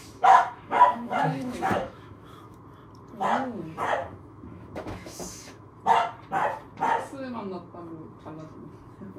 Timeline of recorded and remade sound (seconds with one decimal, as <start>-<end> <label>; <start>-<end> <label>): 0.0-2.6 remade; 2.6-4.0 recorded; 4.0-5.7 remade; 5.7-9.2 recorded